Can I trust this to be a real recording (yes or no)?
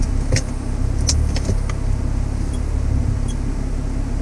yes